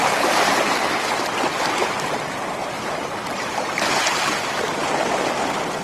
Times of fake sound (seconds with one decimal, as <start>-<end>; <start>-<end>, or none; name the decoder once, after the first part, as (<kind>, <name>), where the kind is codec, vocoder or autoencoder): 0.0-0.8 (vocoder, BigVGAN v2); 2.6-4.6